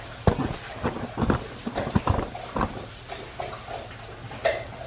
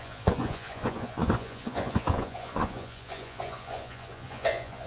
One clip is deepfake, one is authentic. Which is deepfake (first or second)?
second